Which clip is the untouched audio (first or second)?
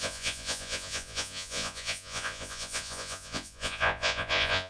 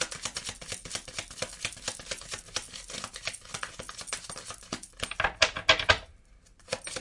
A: second